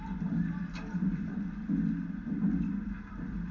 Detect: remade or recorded remade